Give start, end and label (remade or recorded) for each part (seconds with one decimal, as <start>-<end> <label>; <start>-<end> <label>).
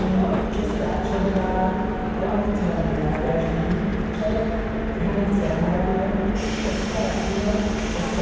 0.0-8.2 recorded